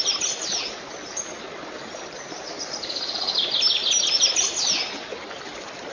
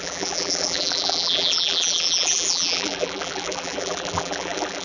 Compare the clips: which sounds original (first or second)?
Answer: first